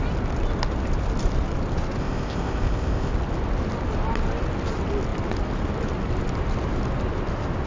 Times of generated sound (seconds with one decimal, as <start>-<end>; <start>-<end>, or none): 2.0-3.1